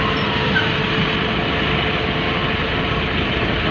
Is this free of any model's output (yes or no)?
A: yes